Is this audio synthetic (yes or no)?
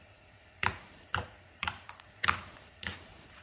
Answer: yes